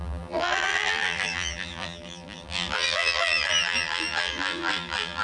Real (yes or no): no